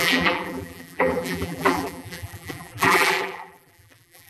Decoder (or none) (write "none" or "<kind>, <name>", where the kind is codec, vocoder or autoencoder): vocoder, BigVGAN v2